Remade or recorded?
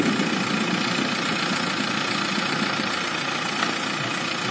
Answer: recorded